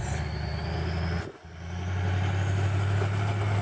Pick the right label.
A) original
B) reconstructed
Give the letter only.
A